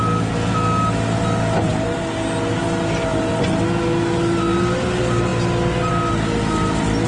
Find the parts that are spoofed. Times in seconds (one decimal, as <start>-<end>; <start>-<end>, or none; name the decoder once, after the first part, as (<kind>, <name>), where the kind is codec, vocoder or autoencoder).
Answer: none